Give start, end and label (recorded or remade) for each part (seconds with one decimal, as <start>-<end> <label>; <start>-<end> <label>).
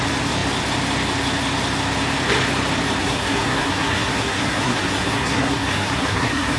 0.0-3.0 recorded; 3.0-6.6 remade